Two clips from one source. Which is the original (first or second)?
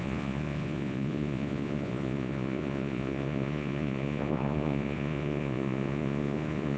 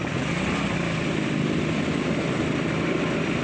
second